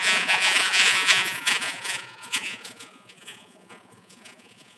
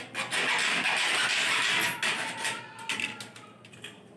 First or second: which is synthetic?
first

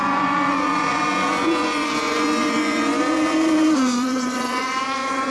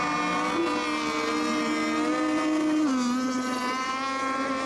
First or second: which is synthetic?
first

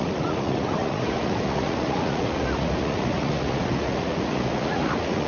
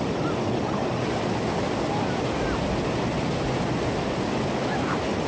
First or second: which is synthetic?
first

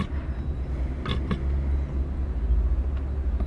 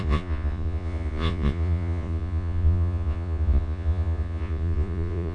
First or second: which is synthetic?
second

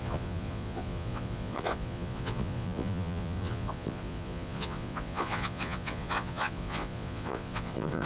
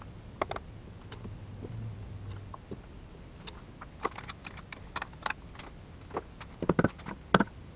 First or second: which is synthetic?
first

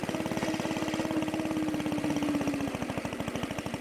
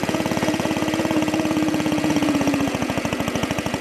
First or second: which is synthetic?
second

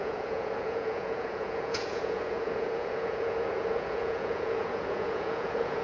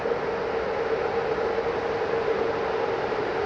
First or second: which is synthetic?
first